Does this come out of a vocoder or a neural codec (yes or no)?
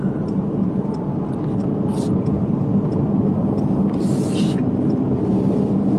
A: yes